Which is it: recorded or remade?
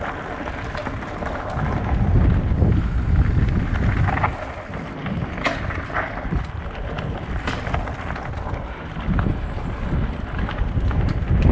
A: recorded